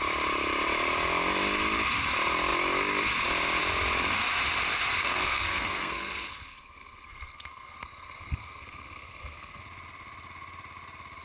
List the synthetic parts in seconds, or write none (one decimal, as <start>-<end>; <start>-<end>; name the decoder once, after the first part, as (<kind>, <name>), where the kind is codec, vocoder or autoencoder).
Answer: 5.0-9.6 (codec, SNAC)